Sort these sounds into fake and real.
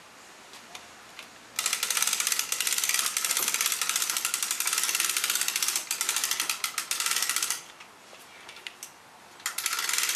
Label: real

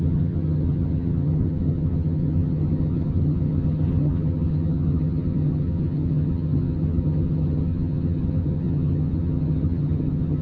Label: fake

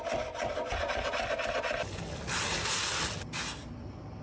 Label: real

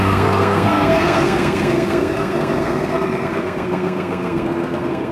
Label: fake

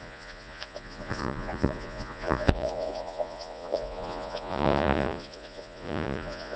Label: fake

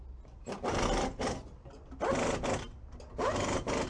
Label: real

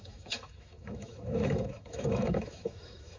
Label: fake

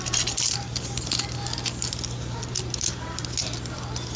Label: real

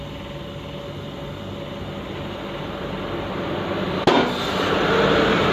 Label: real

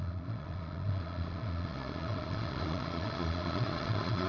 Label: fake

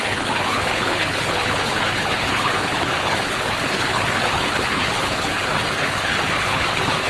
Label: fake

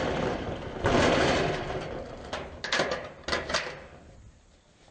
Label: real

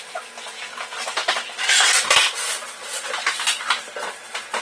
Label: real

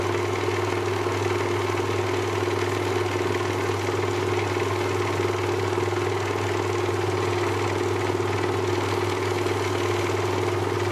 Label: real